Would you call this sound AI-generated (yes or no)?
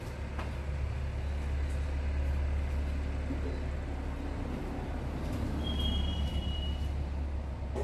no